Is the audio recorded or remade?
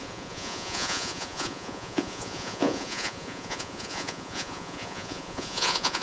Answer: remade